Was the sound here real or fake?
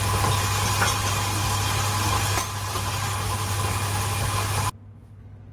real